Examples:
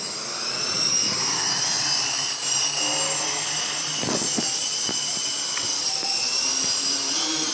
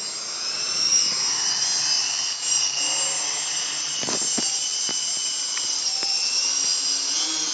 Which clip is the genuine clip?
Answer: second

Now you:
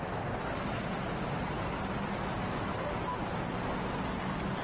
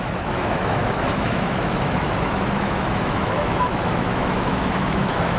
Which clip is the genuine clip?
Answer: first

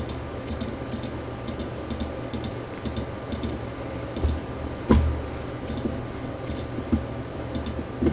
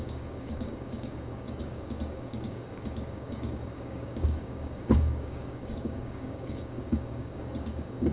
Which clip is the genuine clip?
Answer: first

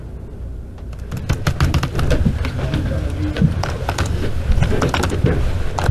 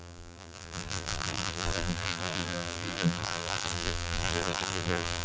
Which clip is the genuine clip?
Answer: first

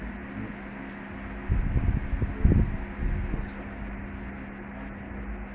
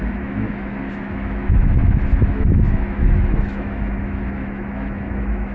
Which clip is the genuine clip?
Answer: first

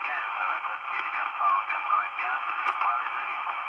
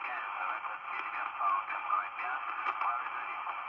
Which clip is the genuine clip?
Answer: second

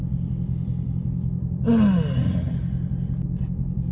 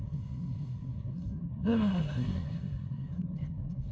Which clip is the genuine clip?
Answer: first